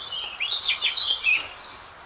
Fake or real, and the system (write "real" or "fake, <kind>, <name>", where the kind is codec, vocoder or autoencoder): real